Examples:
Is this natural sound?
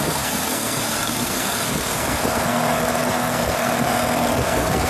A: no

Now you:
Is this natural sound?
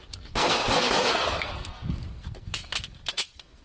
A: no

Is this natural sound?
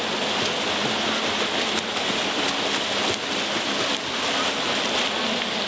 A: yes